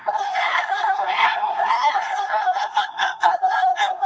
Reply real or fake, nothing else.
fake